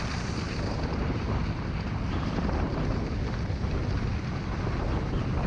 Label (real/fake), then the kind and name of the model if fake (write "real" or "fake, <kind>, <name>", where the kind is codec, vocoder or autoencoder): real